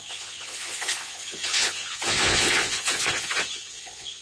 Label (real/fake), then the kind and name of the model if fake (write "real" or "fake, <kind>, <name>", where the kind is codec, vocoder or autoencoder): fake, vocoder, Vocos